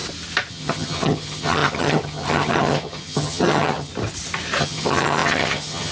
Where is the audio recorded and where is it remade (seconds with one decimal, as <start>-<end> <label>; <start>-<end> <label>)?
0.0-0.5 recorded; 0.5-3.9 remade; 3.9-4.6 recorded; 4.6-5.9 remade